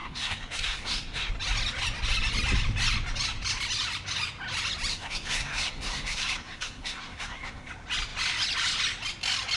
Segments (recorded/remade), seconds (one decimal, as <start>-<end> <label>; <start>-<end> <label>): 0.0-1.3 remade; 1.3-4.9 recorded; 4.9-7.7 remade; 7.7-9.6 recorded